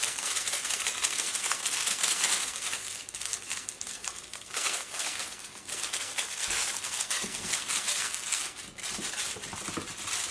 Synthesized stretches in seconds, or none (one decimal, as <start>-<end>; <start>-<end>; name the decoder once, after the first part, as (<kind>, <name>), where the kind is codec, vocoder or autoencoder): 0.0-8.8 (codec, SNAC)